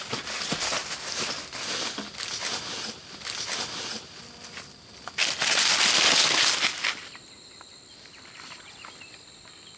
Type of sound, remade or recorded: recorded